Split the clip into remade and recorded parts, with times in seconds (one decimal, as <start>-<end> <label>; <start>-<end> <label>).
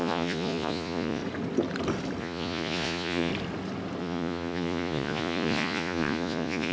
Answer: 0.0-1.2 remade; 1.2-2.2 recorded; 2.2-3.3 remade; 3.3-4.0 recorded; 4.0-6.7 remade